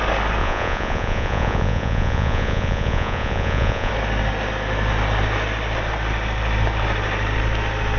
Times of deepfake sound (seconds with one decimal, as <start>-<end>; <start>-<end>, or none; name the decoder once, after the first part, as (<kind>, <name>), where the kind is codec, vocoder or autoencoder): 0.4-3.9 (vocoder, Vocos)